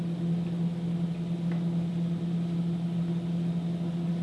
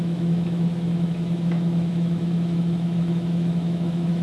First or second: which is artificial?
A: second